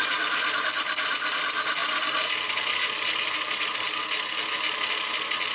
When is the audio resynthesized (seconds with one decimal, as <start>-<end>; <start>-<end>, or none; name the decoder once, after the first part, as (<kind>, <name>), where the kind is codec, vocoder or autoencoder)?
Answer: none